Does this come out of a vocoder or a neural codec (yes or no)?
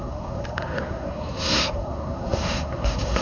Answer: yes